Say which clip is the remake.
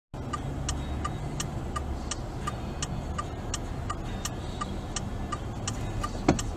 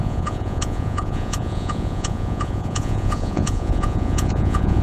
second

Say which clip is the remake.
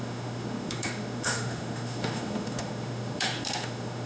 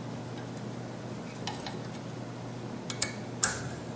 first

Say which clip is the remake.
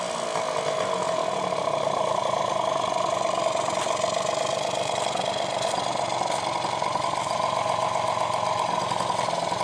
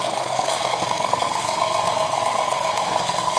second